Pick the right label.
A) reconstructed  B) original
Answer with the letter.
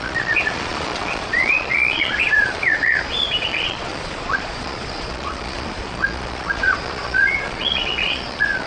A